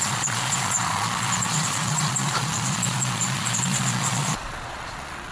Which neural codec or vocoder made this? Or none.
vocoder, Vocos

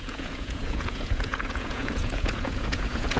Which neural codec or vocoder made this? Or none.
vocoder, Vocos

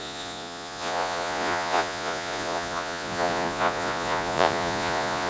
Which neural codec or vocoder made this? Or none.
vocoder, Vocos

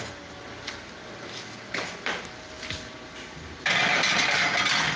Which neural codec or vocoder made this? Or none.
none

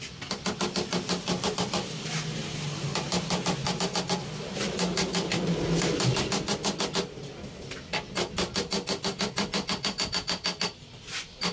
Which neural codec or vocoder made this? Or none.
none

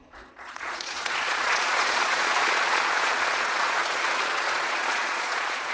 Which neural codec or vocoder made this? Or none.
vocoder, Vocos